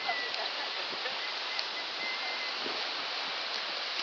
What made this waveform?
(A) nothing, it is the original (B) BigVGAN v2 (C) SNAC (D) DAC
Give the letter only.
A